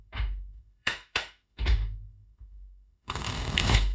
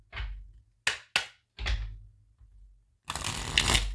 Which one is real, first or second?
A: second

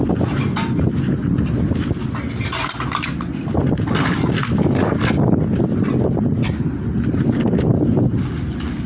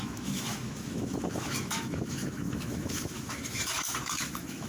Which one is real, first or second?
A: first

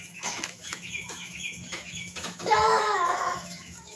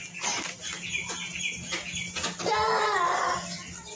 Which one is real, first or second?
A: second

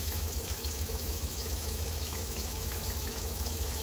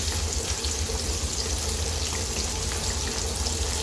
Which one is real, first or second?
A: second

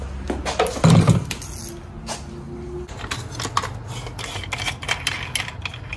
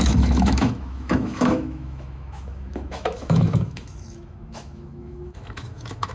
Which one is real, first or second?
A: first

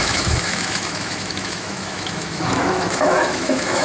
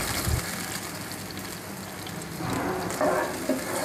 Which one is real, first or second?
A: second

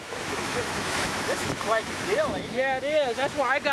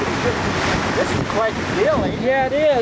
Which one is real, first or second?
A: second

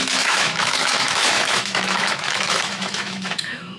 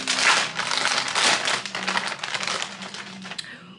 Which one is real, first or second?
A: second